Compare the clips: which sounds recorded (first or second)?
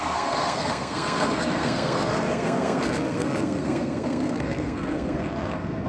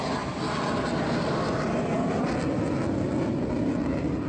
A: second